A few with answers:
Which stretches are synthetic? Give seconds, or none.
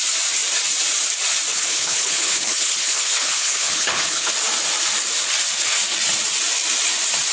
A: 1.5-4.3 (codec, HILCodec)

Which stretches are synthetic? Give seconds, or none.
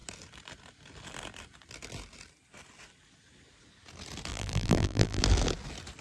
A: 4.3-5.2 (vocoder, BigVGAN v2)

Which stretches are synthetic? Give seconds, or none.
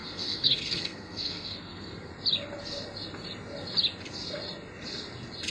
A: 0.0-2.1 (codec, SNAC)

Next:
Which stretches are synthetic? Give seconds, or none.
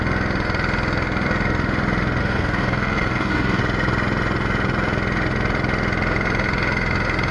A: 2.2-3.6 (codec, SNAC)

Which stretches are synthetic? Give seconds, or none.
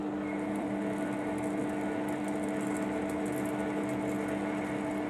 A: 0.0-1.6 (vocoder, BigVGAN v2)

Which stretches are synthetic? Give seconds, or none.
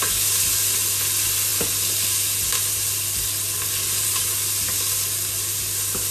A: none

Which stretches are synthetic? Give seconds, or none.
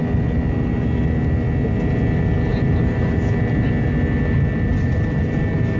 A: 2.5-3.2 (vocoder, BigVGAN v2); 4.7-5.8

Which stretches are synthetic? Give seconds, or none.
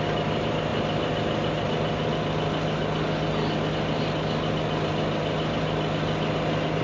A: none